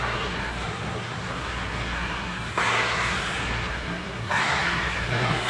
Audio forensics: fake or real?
fake